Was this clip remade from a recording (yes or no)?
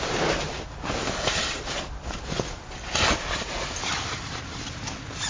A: no